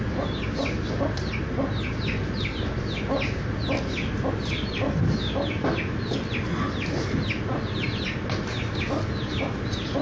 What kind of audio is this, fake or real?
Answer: real